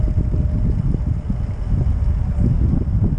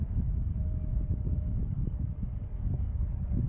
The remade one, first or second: second